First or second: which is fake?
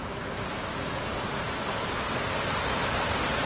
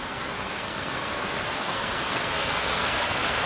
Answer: second